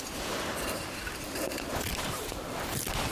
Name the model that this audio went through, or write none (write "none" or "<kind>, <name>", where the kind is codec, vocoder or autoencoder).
none